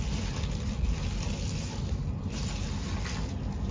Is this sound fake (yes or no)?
no